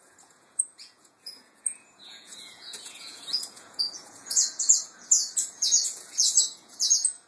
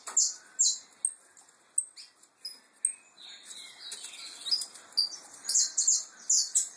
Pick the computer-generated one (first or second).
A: first